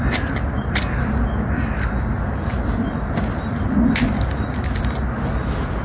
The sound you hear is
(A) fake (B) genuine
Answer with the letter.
B